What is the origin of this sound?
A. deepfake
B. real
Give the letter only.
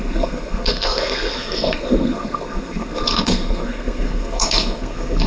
A